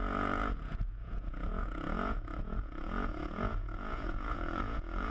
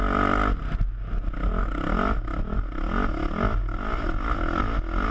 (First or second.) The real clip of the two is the second